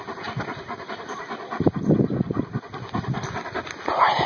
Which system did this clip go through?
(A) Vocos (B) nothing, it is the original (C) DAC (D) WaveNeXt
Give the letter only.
B